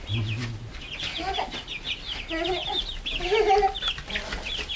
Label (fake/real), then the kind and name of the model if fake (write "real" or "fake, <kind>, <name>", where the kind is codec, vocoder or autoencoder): real